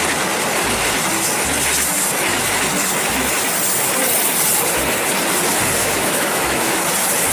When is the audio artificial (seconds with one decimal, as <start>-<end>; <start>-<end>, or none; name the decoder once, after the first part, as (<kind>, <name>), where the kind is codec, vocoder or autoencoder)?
5.8-6.8 (autoencoder, DAC-VAE)